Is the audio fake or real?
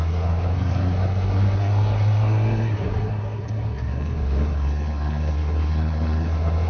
fake